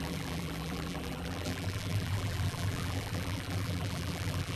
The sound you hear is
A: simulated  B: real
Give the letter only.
A